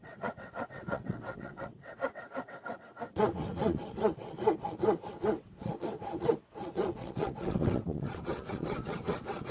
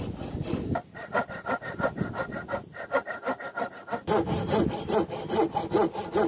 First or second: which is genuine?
second